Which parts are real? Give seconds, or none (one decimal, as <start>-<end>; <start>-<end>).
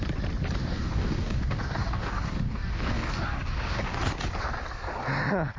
0.0-0.6; 4.0-5.6